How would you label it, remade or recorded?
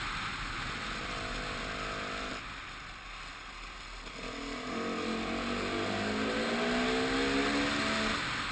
recorded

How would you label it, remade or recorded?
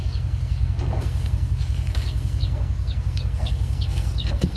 remade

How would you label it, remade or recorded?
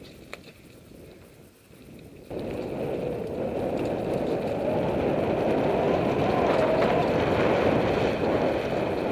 recorded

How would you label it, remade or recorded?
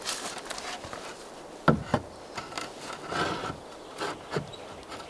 recorded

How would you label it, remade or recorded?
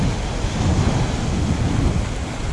recorded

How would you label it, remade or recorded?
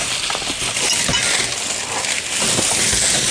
recorded